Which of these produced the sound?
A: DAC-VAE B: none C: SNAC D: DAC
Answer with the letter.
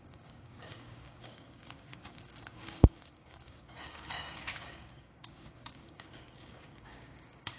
D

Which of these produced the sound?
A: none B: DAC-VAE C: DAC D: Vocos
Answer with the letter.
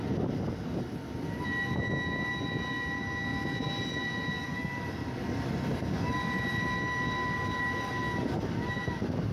A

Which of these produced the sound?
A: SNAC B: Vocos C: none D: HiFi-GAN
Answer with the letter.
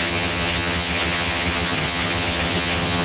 D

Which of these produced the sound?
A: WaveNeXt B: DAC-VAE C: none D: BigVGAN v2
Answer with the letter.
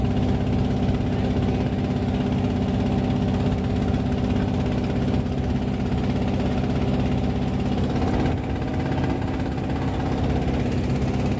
C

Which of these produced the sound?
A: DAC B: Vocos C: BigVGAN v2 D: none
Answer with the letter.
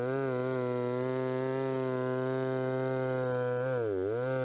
D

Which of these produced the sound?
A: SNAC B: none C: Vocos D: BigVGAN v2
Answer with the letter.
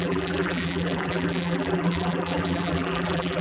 D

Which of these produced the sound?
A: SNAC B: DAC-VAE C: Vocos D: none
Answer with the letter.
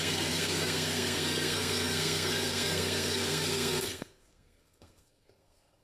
A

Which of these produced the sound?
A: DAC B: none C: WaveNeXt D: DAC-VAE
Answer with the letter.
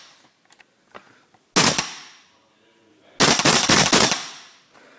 B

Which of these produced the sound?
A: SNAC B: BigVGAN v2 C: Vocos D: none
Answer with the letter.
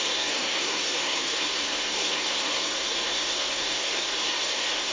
A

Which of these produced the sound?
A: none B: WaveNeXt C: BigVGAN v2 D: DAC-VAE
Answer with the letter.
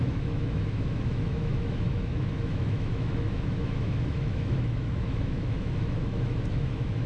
D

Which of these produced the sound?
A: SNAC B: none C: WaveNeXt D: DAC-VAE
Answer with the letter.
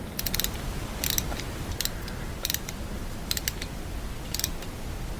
B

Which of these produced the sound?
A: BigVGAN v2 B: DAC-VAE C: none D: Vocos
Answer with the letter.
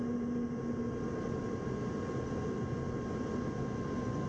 C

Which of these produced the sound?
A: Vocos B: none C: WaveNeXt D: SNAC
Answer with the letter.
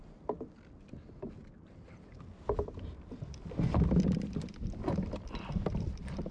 B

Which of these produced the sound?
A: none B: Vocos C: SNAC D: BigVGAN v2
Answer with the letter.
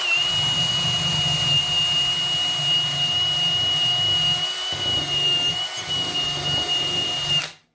A